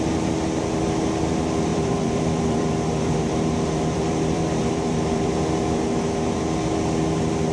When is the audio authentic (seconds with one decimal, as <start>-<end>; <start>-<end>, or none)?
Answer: 0.0-1.7; 5.3-7.5